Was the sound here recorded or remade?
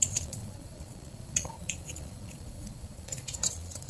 remade